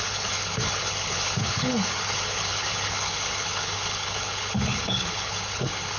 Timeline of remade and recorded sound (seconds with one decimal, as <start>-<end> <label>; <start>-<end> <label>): 0.0-6.0 remade